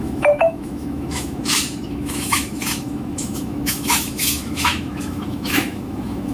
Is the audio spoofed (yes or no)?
yes